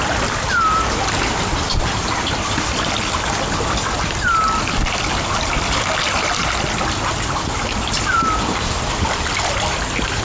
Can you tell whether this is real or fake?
real